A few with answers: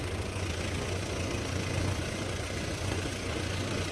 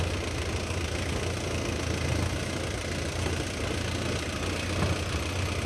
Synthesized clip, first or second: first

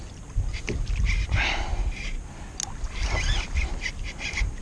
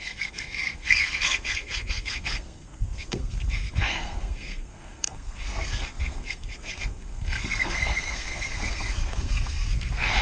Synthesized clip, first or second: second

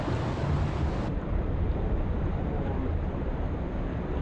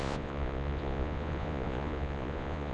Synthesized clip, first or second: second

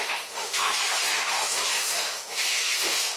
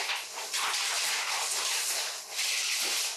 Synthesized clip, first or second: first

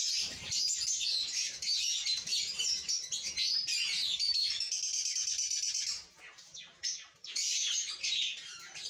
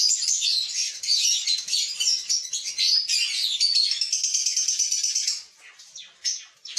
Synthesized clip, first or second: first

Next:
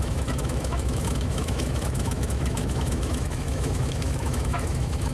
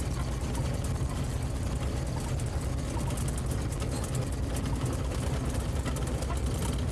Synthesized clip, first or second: first